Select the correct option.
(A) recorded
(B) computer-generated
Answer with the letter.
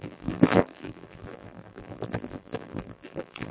B